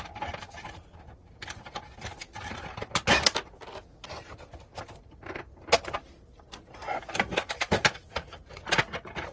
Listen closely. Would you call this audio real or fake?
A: real